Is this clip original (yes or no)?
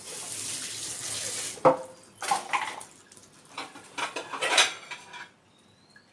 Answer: yes